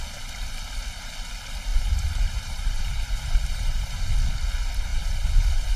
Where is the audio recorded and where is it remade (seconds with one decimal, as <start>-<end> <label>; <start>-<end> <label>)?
0.0-1.7 recorded; 1.7-4.1 remade; 4.1-4.9 recorded; 4.9-5.8 remade